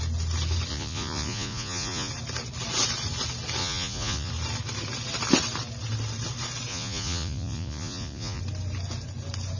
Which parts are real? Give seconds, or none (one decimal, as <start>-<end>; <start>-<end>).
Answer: 0.0-0.7; 2.1-3.6; 4.3-6.7; 8.4-9.6